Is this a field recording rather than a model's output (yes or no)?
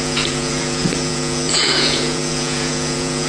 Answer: no